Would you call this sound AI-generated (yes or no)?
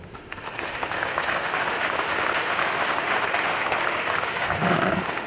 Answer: yes